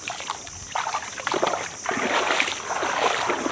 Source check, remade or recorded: recorded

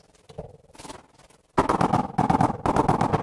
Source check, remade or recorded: recorded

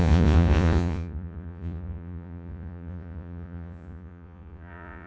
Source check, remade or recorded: remade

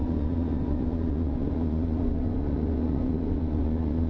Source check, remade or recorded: remade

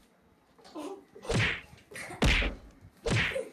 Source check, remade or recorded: recorded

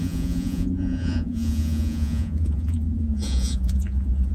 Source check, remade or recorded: remade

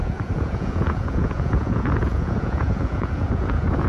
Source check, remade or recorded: remade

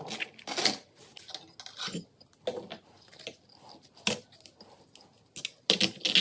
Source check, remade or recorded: recorded